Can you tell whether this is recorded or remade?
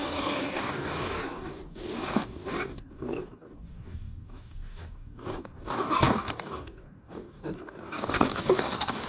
remade